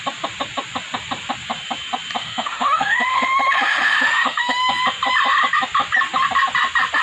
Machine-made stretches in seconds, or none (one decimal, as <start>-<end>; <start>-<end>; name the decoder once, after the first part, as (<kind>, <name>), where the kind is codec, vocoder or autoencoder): 2.2-4.7 (autoencoder, DAC-VAE)